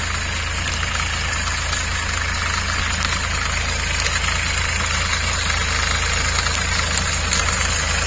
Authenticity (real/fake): real